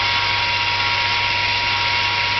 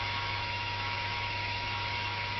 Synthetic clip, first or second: second